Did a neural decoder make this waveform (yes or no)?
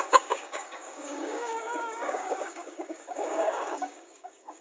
yes